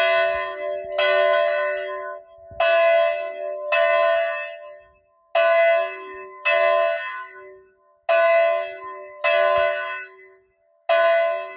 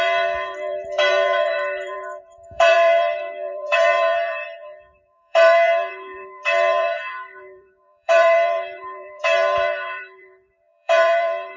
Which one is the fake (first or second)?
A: second